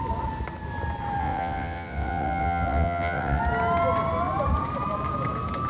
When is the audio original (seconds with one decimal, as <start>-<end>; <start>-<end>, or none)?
0.0-1.2; 3.4-5.7